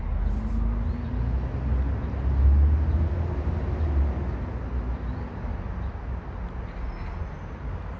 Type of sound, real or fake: real